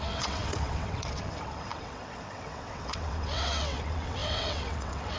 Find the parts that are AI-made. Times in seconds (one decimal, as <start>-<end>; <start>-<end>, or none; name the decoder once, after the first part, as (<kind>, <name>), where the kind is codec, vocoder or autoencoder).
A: 0.0-5.2 (vocoder, WaveNeXt)

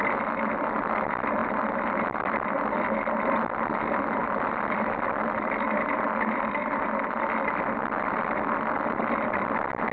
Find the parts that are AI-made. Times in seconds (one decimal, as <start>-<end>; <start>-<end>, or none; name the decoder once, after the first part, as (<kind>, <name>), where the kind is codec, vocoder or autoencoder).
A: none

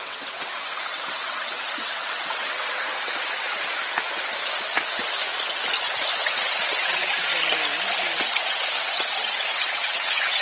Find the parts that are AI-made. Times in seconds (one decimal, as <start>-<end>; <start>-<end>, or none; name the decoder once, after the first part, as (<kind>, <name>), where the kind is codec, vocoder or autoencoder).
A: 0.0-2.9 (vocoder, WaveNeXt); 6.1-7.3; 8.4-10.4

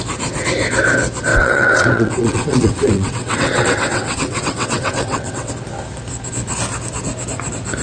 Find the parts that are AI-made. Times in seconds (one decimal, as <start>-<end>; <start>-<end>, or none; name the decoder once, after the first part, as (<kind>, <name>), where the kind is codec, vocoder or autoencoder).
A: 1.3-5.5 (vocoder, WaveNeXt)

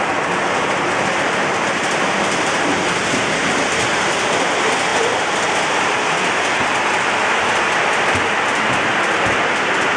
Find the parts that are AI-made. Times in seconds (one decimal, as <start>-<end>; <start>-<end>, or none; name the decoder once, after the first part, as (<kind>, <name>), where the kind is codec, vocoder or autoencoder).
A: none

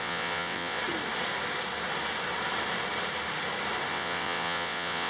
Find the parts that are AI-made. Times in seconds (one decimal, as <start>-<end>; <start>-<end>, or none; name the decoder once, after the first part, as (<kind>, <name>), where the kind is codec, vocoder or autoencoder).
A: 0.0-0.8 (vocoder, WaveNeXt); 3.9-5.1

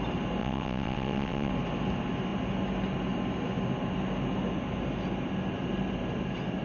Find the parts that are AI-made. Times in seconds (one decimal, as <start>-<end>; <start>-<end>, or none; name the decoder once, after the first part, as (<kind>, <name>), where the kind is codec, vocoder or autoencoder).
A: 0.4-1.5 (vocoder, WaveNeXt)